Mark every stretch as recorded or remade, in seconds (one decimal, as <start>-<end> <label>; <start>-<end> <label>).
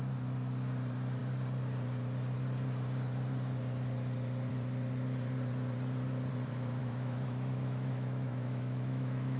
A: 0.0-6.8 recorded; 6.8-9.4 remade